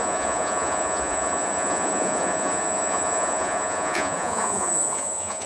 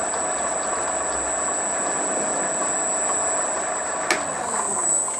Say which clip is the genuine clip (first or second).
second